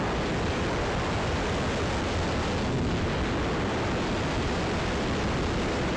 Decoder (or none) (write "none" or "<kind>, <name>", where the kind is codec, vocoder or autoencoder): none